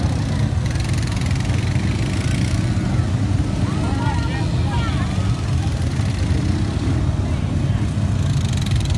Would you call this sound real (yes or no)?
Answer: yes